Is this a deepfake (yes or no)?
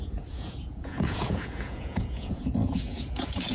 yes